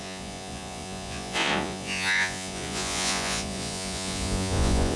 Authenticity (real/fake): fake